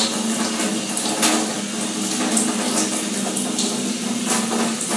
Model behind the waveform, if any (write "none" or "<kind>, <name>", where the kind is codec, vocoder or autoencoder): none